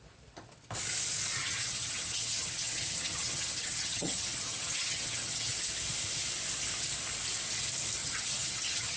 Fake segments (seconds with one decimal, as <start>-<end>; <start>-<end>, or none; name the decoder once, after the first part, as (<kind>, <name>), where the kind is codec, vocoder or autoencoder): 1.4-5.5 (vocoder, HiFi-GAN); 8.0-9.0